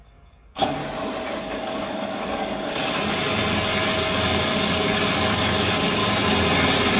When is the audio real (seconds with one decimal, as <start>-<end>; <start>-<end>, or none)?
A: 0.8-1.4; 2.8-4.1; 6.0-7.0

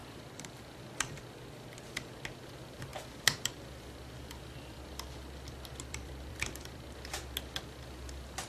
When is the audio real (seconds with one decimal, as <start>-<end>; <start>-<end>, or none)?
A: 1.2-2.9; 7.2-8.5

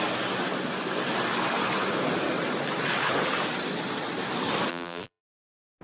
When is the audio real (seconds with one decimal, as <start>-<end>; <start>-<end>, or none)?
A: 0.0-4.7; 5.2-5.8

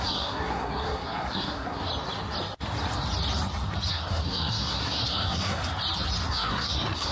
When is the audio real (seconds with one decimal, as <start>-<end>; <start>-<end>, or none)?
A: 1.9-3.9; 5.6-6.3

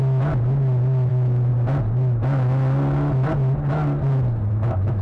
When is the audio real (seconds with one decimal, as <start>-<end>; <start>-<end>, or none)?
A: 0.0-1.1; 1.5-4.5

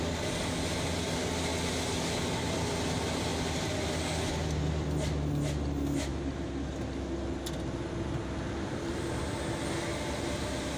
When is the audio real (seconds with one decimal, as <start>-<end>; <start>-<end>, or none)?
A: 0.0-10.8

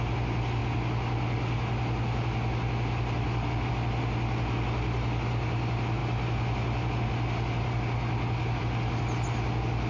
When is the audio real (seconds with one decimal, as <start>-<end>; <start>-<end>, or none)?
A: 0.0-9.9

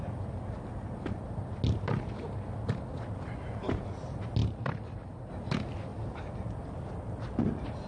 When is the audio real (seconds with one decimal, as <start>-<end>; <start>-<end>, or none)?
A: 0.0-4.4; 5.3-7.9